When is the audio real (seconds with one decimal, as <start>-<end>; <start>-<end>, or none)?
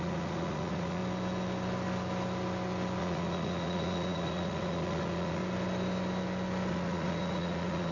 1.0-3.0; 5.4-6.7